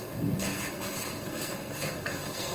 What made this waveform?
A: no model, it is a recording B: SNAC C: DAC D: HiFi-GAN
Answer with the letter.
B